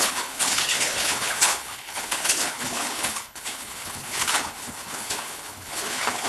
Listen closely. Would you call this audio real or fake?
fake